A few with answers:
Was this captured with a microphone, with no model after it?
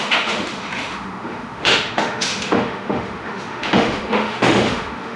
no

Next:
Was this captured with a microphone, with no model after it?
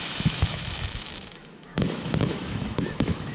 no